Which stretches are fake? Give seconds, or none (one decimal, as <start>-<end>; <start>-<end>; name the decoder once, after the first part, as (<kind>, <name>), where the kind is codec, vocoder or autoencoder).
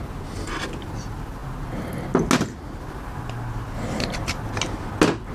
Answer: none